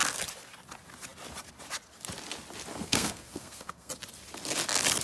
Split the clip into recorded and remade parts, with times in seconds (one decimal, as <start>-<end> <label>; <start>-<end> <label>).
0.0-2.7 recorded; 2.7-3.9 remade; 3.9-5.0 recorded